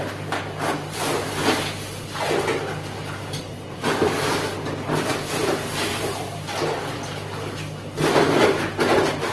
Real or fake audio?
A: real